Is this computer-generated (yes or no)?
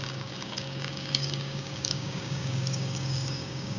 yes